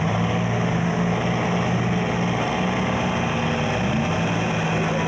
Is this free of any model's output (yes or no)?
yes